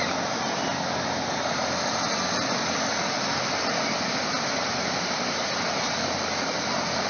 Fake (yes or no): no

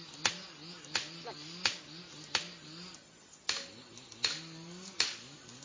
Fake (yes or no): no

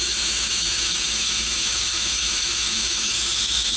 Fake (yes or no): yes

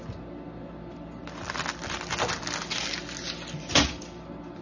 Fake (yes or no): no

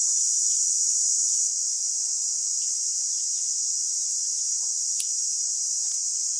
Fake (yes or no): no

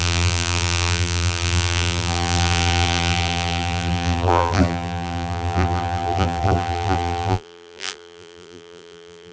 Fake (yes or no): yes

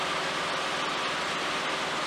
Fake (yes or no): no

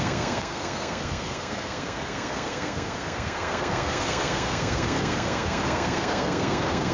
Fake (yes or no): yes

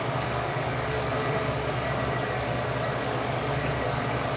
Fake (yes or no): yes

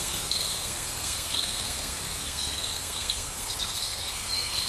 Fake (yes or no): yes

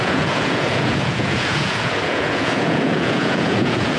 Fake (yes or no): yes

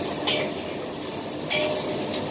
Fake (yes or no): no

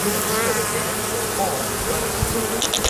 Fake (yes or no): no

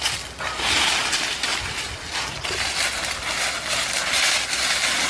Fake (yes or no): no